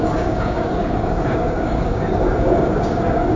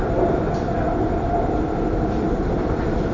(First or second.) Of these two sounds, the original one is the second